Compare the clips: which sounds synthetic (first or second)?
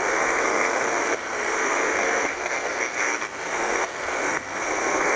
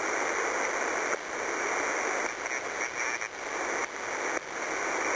first